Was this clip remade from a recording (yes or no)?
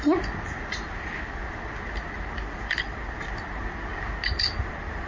no